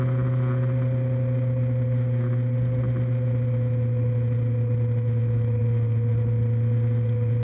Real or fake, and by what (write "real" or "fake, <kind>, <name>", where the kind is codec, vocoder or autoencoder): real